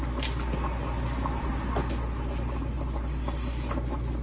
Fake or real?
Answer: real